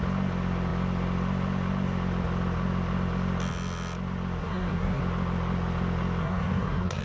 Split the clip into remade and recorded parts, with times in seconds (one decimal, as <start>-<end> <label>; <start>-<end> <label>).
0.0-4.4 recorded; 4.4-5.0 remade; 5.0-6.2 recorded; 6.2-7.0 remade